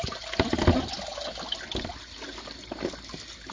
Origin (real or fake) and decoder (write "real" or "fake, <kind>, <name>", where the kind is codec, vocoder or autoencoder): real